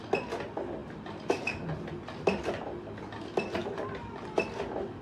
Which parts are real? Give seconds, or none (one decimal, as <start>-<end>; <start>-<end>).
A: 0.0-3.6; 4.4-5.0